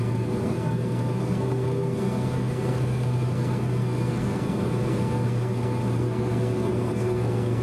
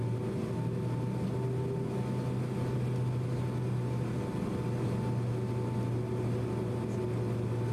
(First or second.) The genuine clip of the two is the second